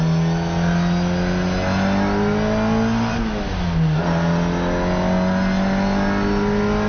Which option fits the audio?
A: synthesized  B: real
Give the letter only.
B